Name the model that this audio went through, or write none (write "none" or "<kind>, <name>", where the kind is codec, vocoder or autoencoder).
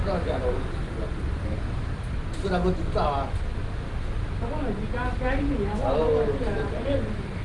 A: none